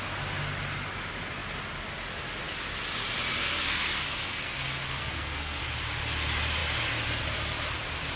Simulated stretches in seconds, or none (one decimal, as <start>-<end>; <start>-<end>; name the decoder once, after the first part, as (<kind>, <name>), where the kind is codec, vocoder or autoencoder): 3.4-5.6 (codec, SNAC)